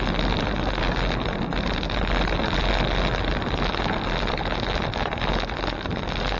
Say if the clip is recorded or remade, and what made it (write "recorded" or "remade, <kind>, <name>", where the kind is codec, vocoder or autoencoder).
recorded